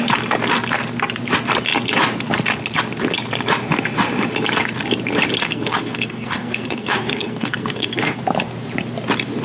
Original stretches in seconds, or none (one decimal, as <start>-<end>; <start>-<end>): 0.0-5.4; 8.2-9.4